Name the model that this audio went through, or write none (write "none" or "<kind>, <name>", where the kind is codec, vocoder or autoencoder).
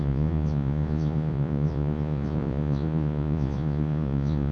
vocoder, Vocos